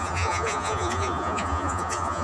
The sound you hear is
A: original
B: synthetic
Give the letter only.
B